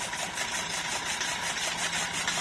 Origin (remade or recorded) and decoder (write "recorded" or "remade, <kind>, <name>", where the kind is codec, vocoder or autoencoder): recorded